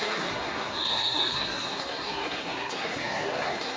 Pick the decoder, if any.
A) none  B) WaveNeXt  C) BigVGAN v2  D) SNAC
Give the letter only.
D